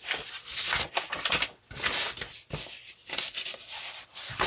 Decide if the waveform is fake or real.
real